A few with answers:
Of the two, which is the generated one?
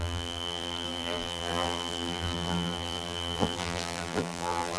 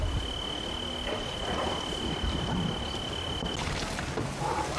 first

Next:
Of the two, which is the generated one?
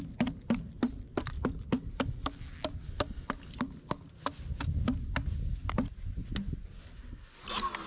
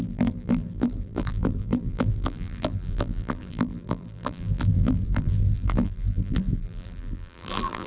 second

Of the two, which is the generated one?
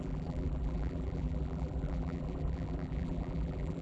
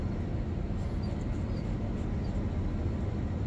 first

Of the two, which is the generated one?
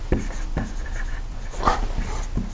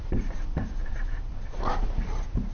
second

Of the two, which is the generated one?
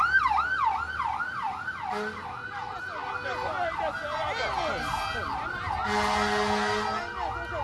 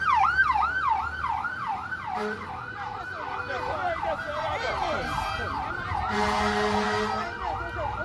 second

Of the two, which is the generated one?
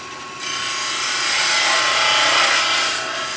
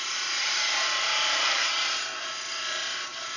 second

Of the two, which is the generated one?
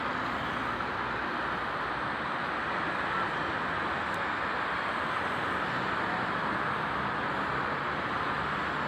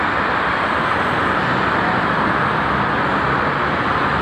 second